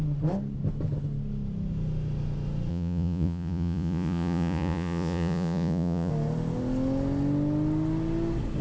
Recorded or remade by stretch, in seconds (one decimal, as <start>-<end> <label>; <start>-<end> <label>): 0.0-2.7 recorded; 2.7-6.1 remade; 6.1-8.6 recorded